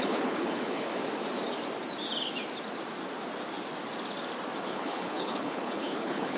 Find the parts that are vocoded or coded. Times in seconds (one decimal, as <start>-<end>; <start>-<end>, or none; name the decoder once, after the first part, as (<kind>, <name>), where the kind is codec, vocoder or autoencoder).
0.0-0.9 (codec, HILCodec); 4.7-6.4